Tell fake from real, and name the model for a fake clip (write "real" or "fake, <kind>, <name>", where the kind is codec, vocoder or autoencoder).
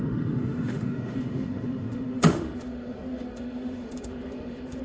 fake, autoencoder, DAC-VAE